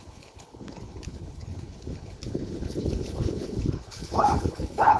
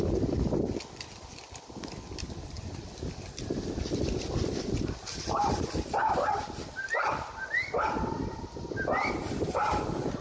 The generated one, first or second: first